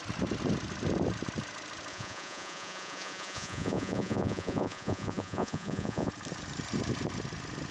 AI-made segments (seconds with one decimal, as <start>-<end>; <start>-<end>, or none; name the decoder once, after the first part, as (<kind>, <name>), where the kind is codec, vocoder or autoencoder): 1.9-6.1 (vocoder, Vocos)

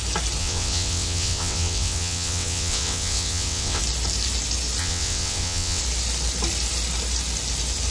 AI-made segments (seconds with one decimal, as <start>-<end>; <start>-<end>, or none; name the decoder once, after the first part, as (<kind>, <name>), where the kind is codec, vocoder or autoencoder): 0.4-3.8 (vocoder, WaveNeXt); 4.8-5.8